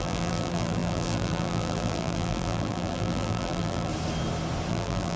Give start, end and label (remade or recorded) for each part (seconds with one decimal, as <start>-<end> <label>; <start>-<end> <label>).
0.0-3.9 remade; 3.9-4.7 recorded; 4.7-5.2 remade